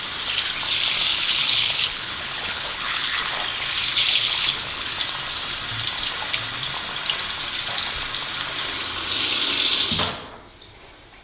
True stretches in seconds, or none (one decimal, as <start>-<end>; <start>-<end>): 0.0-1.1; 3.3-4.1; 4.9-11.2

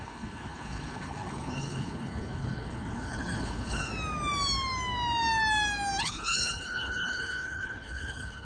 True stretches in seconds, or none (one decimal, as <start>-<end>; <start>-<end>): 3.9-6.0

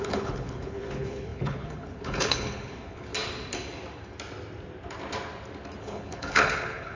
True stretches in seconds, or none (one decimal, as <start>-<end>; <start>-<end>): 3.1-5.8

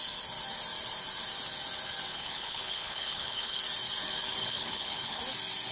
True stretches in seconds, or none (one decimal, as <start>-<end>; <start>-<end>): 0.0-2.1; 3.6-4.4; 5.2-5.7